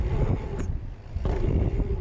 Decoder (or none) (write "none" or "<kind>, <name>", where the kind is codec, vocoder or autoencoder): none